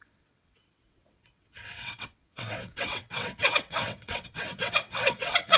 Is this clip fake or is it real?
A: fake